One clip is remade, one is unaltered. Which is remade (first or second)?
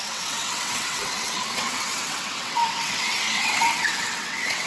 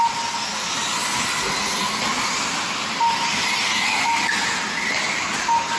first